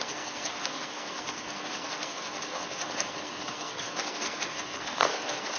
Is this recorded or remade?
remade